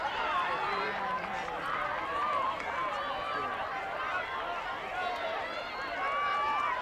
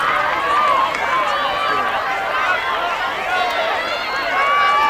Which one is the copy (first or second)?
first